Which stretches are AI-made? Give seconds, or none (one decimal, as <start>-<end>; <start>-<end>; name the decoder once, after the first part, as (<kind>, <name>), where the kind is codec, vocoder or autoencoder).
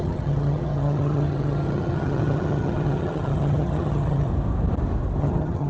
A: 0.0-4.3 (vocoder, HiFi-GAN); 5.2-5.7